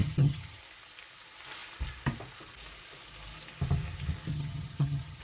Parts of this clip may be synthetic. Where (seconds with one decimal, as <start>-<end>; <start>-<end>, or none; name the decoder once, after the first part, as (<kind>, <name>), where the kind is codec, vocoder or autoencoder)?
0.0-0.6 (vocoder, HiFi-GAN); 4.3-5.2